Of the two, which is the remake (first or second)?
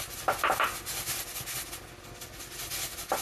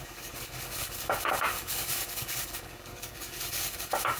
second